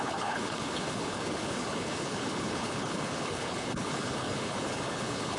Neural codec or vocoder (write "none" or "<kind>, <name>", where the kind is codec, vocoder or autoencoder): codec, HILCodec